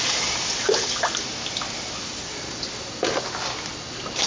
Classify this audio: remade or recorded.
recorded